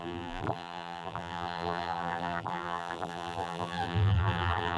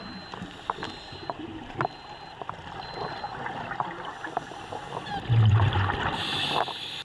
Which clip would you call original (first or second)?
second